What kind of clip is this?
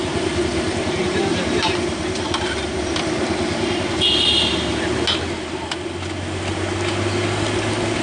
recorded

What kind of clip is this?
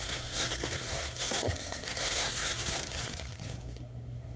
remade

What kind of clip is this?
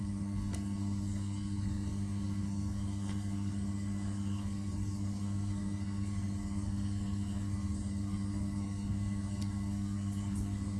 remade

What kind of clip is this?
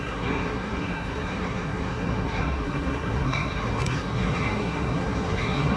remade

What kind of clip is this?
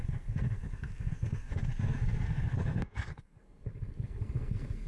remade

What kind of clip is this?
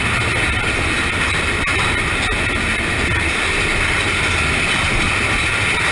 recorded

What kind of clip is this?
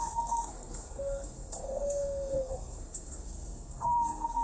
remade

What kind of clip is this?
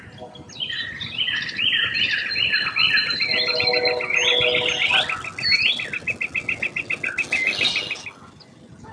recorded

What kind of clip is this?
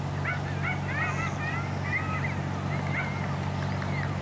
recorded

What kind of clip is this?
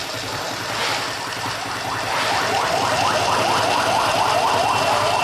recorded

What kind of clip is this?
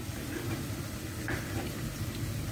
recorded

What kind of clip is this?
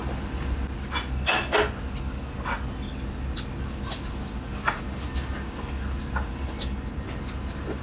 recorded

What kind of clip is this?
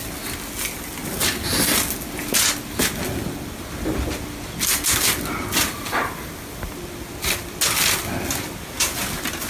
recorded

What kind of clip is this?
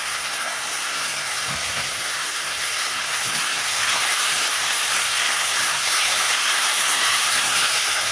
remade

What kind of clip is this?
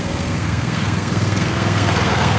remade